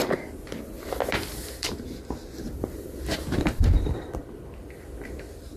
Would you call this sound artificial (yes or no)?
yes